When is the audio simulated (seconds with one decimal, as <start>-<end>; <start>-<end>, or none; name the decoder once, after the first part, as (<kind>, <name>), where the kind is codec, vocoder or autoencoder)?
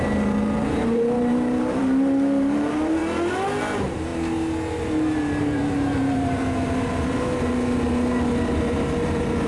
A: 0.0-3.0 (vocoder, BigVGAN v2); 3.6-4.1; 4.8-6.4; 8.7-9.5